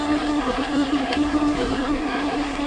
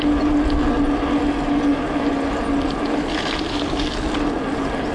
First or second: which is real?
second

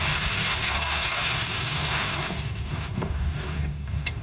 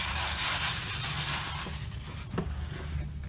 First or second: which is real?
second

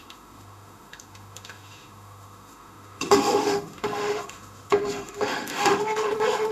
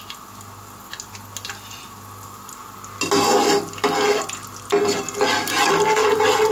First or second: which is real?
second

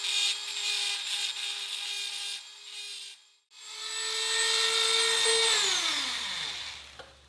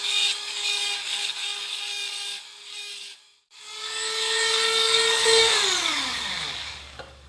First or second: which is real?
first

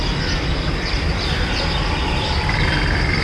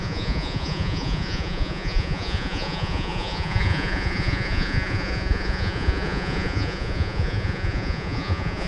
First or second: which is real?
first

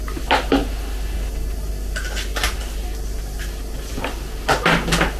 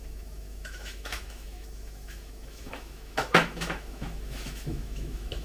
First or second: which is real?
first